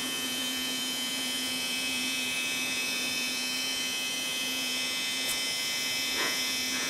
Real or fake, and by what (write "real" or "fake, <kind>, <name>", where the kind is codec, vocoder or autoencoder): fake, vocoder, Vocos